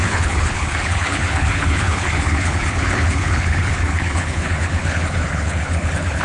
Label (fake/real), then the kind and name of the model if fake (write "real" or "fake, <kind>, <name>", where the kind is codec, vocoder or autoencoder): fake, codec, HILCodec